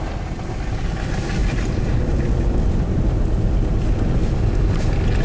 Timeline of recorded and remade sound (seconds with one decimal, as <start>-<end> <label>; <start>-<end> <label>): 0.0-5.2 recorded